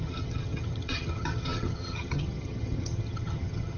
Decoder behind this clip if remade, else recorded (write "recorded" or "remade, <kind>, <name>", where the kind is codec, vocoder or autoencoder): remade, vocoder, HiFi-GAN